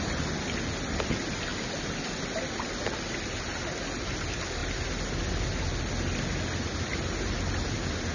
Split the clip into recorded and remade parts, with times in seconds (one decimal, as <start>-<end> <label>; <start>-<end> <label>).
0.0-8.1 recorded